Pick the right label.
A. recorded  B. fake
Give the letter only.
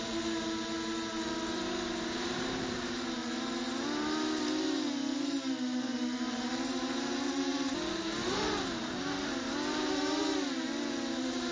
B